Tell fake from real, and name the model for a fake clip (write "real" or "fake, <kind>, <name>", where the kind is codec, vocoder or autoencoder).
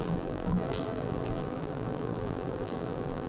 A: fake, vocoder, BigVGAN v2